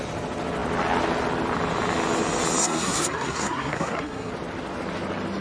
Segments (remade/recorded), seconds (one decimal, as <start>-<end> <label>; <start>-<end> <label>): 0.0-2.6 recorded; 2.6-4.3 remade; 4.3-5.4 recorded